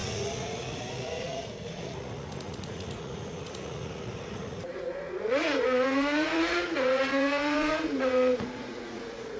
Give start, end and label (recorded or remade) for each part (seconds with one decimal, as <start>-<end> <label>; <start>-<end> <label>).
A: 0.0-9.4 remade